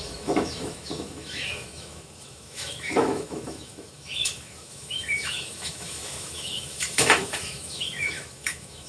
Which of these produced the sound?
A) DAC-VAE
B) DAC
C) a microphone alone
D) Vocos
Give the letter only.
A